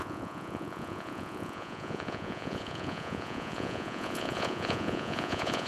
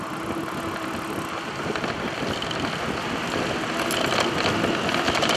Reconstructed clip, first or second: first